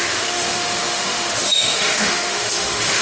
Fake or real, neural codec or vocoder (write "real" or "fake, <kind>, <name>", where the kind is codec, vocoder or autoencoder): fake, autoencoder, DAC-VAE